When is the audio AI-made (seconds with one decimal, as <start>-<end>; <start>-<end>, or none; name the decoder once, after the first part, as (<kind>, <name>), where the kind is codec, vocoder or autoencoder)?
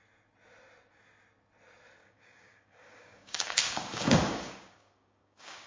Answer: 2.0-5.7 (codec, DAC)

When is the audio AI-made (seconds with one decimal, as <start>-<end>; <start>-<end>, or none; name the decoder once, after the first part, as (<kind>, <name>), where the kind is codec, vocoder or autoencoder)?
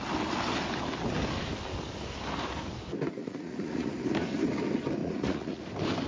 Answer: 3.2-3.9 (vocoder, Vocos); 5.0-5.6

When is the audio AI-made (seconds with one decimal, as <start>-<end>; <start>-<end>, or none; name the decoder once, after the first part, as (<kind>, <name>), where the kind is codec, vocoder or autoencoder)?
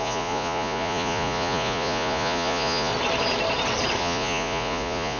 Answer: 0.0-2.9 (vocoder, Vocos); 4.0-5.2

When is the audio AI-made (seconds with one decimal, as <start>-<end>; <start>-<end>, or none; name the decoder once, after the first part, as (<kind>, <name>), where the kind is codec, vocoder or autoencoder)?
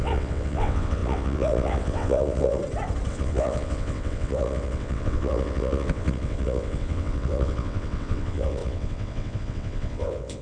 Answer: 0.0-2.6 (vocoder, WaveNeXt); 3.1-10.4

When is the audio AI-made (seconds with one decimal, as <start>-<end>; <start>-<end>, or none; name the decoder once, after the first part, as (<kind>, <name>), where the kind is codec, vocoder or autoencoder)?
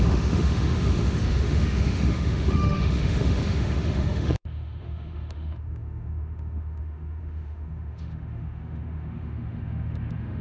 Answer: 0.0-10.4 (autoencoder, DAC-VAE)